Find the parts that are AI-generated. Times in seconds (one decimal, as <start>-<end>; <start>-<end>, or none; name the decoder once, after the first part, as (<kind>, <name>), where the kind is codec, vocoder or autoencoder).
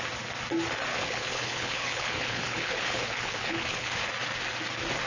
0.9-4.0 (codec, HILCodec)